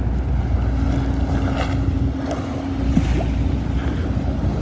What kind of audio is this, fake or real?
real